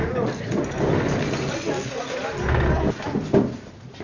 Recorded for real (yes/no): yes